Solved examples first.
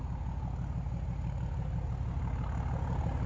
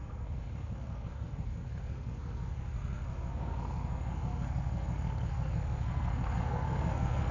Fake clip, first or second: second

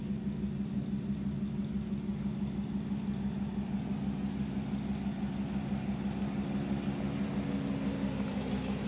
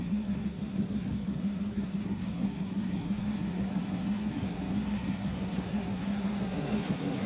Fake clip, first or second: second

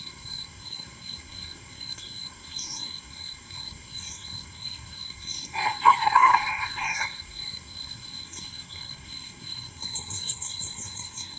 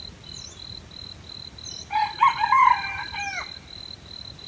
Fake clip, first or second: first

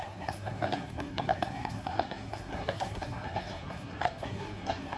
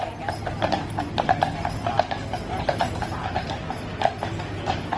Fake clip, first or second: first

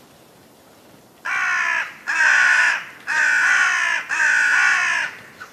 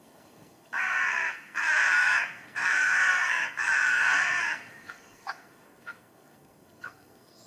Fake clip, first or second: second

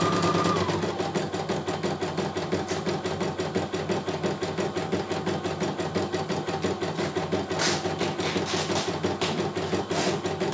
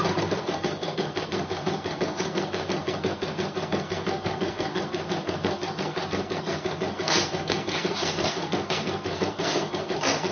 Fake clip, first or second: second